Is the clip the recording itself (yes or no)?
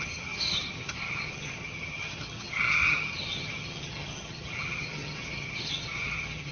no